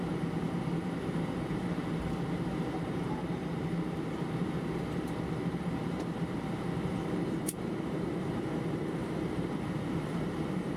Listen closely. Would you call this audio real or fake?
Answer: fake